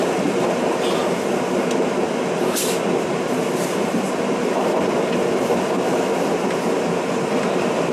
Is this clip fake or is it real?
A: real